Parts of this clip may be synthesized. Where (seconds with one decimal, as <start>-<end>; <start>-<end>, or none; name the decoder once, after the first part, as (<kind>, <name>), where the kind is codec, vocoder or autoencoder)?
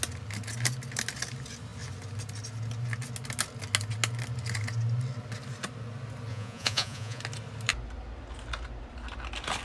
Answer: 6.3-7.2 (vocoder, Vocos)